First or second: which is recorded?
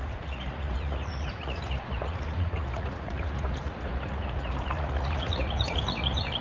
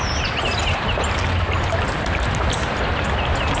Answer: second